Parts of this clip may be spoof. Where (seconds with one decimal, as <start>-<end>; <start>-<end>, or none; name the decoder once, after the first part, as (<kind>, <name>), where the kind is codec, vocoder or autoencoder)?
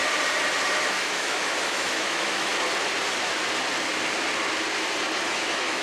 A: 0.9-2.5 (autoencoder, DAC-VAE); 5.3-5.8